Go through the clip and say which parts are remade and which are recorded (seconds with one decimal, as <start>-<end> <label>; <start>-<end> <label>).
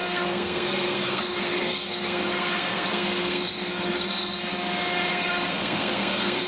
0.0-4.5 remade; 4.5-5.1 recorded; 5.1-6.5 remade